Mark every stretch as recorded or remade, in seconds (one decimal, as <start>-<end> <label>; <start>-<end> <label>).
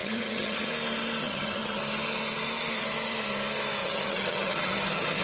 0.0-0.7 remade; 0.7-1.2 recorded; 1.2-1.8 remade; 1.8-3.8 recorded; 3.8-5.2 remade